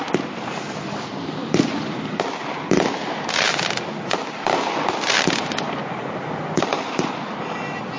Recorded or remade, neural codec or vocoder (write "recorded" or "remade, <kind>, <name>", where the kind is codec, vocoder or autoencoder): recorded